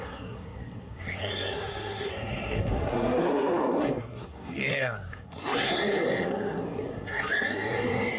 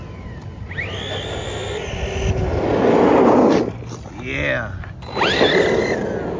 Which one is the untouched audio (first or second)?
second